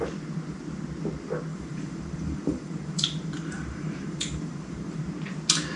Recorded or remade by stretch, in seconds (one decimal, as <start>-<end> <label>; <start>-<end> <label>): 0.0-1.5 recorded; 1.5-5.0 remade; 5.0-5.8 recorded